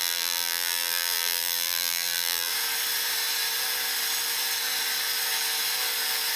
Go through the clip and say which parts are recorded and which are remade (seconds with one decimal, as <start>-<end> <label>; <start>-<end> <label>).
0.0-2.5 remade; 2.5-6.4 recorded